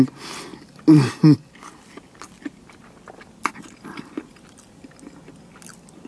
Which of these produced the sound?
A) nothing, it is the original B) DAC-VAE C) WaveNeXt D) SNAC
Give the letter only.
A